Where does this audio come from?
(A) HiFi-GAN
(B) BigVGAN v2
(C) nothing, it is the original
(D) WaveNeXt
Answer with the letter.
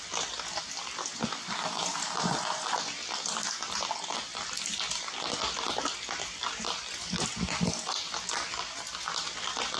C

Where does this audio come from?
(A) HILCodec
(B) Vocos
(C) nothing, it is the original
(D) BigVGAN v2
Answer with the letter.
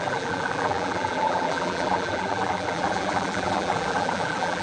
D